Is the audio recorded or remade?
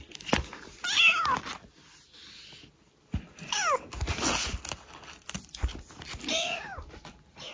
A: recorded